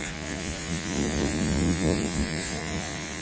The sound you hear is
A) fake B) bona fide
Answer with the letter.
A